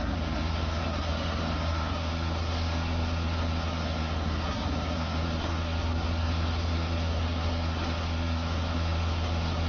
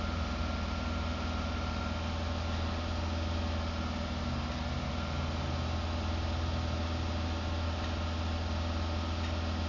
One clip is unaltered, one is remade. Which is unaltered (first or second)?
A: second